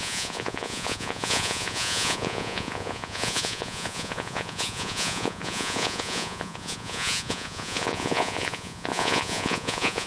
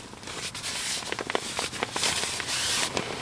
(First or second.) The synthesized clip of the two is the first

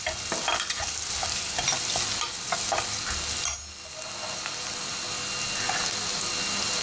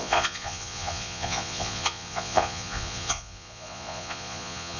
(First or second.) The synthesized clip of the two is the second